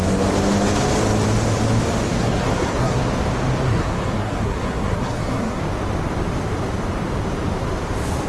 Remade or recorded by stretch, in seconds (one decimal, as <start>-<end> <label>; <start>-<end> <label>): 0.0-2.2 recorded; 2.2-3.0 remade; 3.0-3.7 recorded; 3.7-5.6 remade; 5.6-8.3 recorded